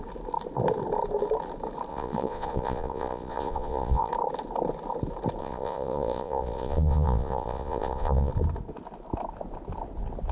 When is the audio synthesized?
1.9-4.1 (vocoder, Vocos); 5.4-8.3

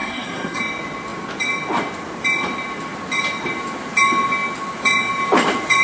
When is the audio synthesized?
0.0-0.6 (codec, SNAC)